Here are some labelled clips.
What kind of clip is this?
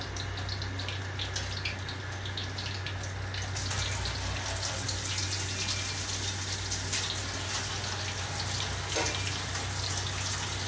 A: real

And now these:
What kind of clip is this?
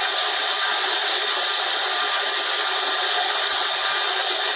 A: real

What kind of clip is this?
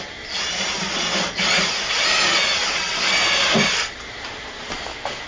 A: real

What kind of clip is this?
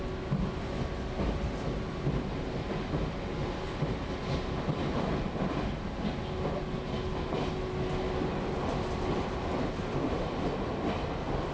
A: real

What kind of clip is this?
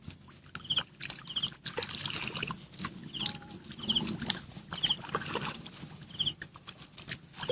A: real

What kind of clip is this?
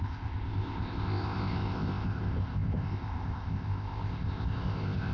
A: fake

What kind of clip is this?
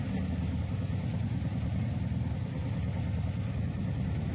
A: real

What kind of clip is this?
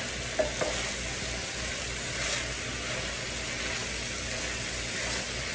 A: real